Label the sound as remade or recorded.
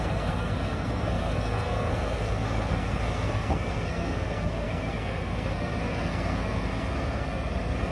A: remade